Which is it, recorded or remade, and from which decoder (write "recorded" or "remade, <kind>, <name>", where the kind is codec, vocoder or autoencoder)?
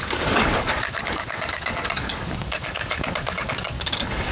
remade, codec, DAC